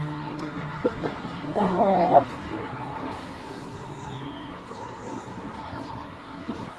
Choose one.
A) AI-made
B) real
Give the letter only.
A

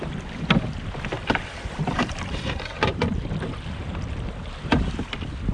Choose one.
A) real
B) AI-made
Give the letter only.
B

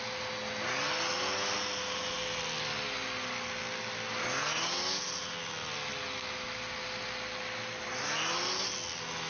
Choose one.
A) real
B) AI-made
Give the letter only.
A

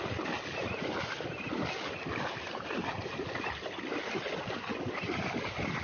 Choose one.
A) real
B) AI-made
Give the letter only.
A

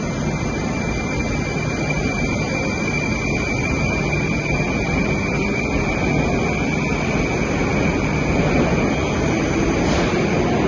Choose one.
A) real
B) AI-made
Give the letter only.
A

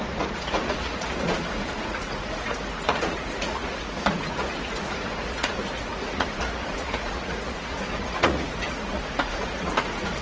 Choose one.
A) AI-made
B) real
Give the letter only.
A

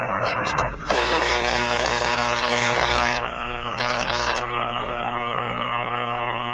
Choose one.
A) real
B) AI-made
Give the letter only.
B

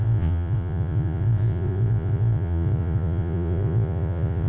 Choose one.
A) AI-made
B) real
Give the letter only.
A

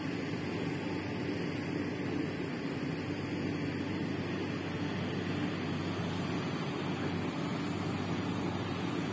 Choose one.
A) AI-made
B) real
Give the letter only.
B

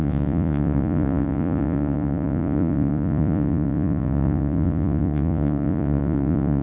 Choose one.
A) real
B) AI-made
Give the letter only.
B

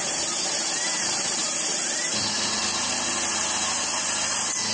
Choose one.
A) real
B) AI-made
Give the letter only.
B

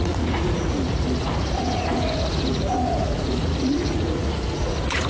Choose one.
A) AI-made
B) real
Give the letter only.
A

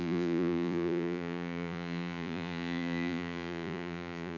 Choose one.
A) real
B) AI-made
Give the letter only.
B